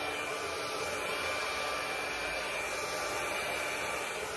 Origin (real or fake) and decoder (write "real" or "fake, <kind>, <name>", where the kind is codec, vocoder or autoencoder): real